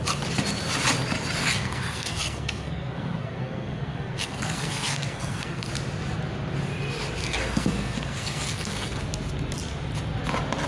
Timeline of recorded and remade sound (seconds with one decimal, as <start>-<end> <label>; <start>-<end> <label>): 0.0-1.4 recorded; 1.4-5.7 remade; 5.7-7.2 recorded; 7.2-9.0 remade; 9.0-10.7 recorded